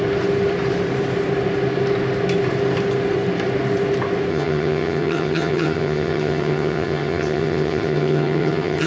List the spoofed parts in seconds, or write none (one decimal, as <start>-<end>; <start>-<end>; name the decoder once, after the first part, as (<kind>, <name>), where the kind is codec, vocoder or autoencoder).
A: 4.3-8.9 (vocoder, HiFi-GAN)